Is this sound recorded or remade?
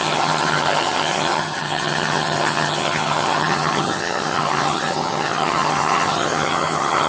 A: remade